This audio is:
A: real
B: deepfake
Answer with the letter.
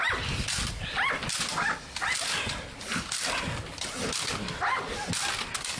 A